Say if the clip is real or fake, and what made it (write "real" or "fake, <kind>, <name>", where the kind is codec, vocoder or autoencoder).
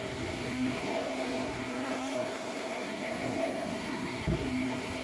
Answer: fake, codec, SNAC